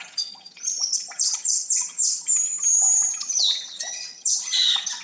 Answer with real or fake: fake